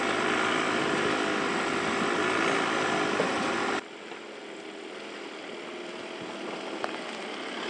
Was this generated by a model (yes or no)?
no